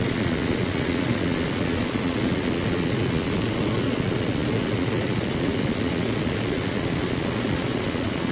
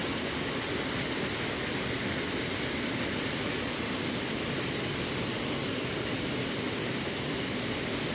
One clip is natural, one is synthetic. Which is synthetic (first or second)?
first